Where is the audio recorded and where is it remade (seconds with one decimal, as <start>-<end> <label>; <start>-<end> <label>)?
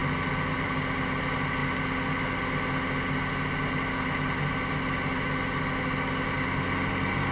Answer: 0.0-0.7 remade; 0.7-7.3 recorded